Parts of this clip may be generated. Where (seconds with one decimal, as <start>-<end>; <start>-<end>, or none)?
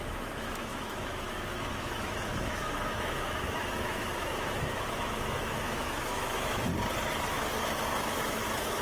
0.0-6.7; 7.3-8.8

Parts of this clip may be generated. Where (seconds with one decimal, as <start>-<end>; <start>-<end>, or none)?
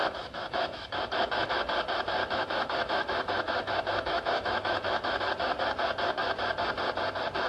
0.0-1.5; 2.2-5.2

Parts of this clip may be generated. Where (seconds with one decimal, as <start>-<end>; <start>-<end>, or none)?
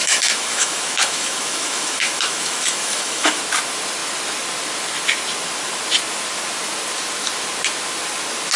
0.0-3.4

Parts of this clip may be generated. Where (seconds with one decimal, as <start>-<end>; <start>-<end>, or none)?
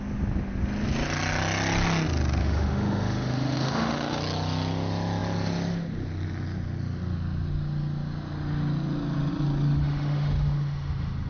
2.4-4.2; 9.8-11.3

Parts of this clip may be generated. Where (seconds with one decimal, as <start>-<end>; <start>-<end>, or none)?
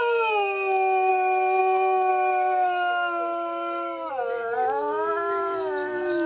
1.1-1.6; 2.1-4.1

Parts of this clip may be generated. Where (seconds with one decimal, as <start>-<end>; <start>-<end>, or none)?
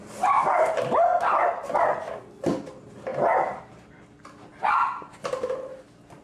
none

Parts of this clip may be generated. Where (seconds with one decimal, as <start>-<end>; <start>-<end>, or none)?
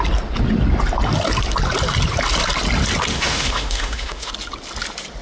3.1-4.3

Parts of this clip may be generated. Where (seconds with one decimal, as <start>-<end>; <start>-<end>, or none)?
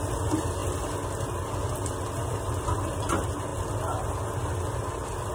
none